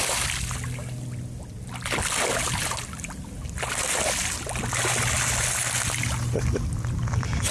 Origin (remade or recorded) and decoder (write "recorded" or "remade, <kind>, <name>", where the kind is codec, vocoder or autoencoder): recorded